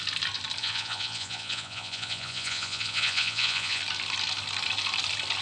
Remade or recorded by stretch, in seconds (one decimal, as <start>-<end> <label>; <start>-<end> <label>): 0.0-0.6 recorded; 0.6-3.8 remade; 3.8-5.4 recorded